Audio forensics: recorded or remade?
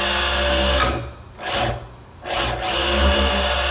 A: recorded